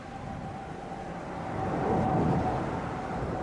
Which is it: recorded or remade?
recorded